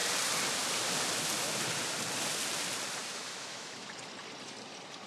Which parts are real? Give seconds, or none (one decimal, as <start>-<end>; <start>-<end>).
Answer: 0.0-3.0; 3.9-5.1